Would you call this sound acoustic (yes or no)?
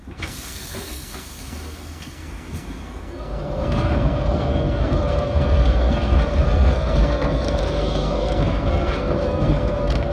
no